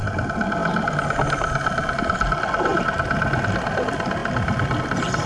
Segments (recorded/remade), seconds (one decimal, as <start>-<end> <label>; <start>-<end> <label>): 0.0-5.3 recorded